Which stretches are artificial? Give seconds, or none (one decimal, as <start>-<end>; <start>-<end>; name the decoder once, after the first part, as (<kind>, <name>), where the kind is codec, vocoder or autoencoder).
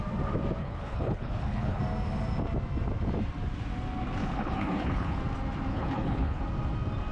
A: 0.6-1.8 (codec, HILCodec); 4.2-5.2; 5.7-6.4